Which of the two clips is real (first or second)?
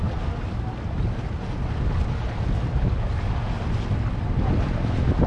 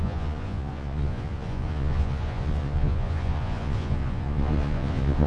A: first